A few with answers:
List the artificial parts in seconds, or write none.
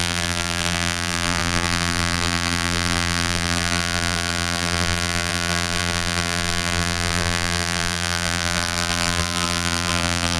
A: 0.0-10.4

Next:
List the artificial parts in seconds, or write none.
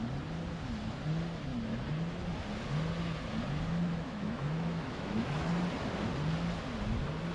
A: 3.9-5.5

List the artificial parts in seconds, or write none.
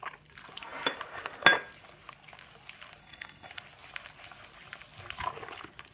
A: 3.0-3.5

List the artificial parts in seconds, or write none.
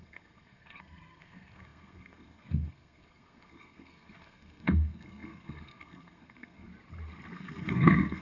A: 0.0-6.7; 7.3-8.2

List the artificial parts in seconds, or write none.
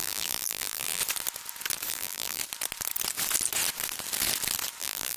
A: 0.0-1.0; 1.9-2.4; 4.8-5.2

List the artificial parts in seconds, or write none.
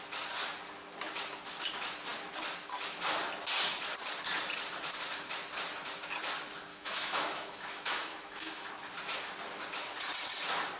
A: 6.7-8.7